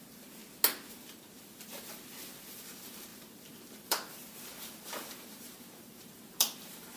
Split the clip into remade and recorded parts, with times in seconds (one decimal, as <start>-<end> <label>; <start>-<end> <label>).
0.0-0.4 remade; 0.4-0.9 recorded; 0.9-7.0 remade